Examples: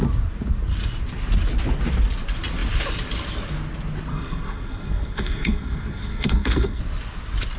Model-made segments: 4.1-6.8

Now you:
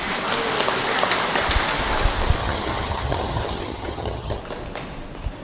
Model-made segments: 2.4-4.4

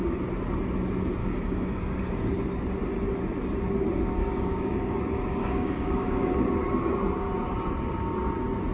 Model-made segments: 1.2-2.3; 4.2-5.0; 5.4-6.4

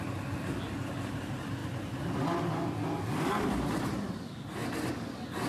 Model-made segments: none

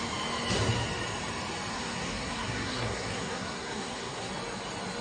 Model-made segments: 1.7-4.3

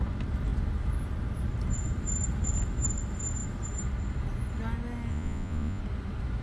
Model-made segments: 5.1-5.8

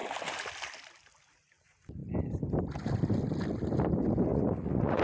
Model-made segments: 4.3-5.0